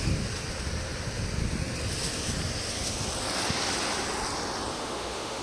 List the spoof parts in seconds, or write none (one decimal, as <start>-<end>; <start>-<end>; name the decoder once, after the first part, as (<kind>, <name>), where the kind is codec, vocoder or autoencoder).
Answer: 4.7-5.4 (autoencoder, DAC-VAE)